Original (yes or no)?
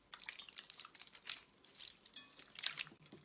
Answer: yes